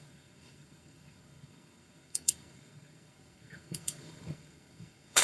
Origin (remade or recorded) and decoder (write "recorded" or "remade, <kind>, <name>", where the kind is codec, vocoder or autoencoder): remade, codec, SNAC